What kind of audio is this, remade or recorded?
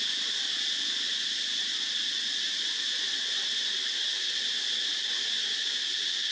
recorded